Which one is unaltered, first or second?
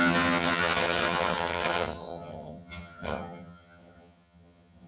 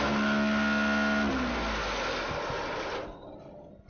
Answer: second